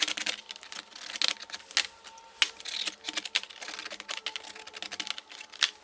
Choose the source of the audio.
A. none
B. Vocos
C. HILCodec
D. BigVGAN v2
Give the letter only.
A